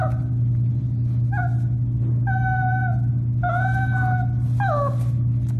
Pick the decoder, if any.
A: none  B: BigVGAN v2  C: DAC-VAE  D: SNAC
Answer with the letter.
A